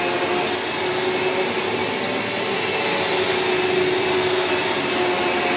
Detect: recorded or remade recorded